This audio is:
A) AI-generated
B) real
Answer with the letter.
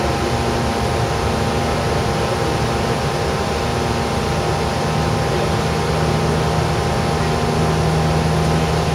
B